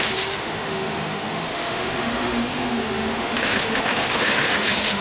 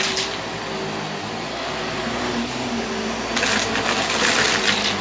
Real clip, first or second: second